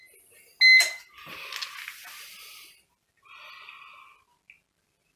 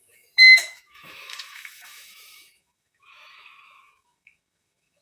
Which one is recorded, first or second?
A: first